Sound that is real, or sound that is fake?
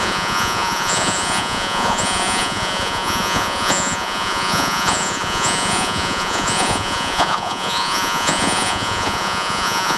fake